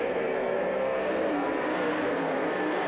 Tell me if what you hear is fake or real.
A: fake